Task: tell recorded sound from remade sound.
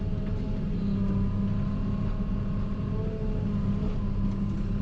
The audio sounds recorded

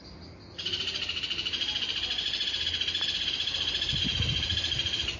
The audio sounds recorded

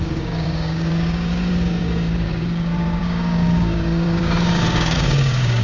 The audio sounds remade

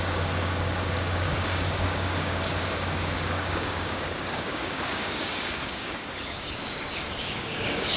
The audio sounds remade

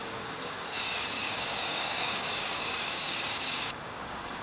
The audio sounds remade